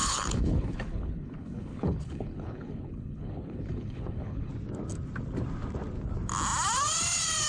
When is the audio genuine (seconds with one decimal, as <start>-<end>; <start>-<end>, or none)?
4.5-7.5